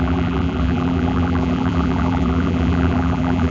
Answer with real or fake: fake